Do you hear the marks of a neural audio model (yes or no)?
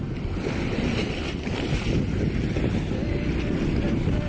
no